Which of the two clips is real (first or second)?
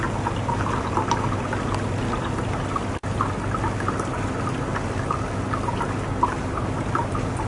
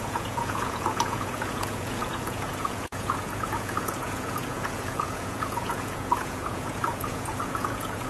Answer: first